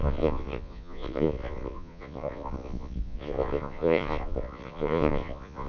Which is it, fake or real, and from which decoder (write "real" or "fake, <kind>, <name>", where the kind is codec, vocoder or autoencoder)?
fake, vocoder, Vocos